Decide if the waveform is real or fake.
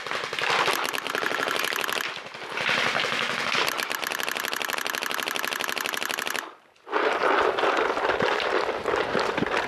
real